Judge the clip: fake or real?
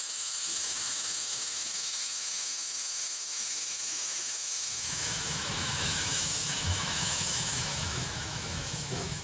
fake